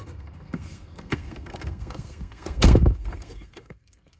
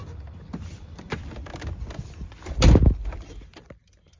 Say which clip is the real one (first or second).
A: second